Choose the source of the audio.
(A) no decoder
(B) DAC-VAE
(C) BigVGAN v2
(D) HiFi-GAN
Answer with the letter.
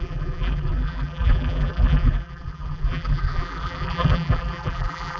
C